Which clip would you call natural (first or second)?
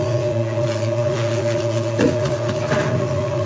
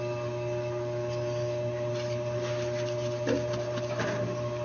second